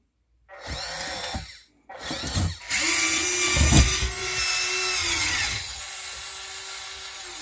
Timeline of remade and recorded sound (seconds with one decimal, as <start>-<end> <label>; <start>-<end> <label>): 0.0-5.0 recorded; 5.0-5.8 remade; 5.8-7.4 recorded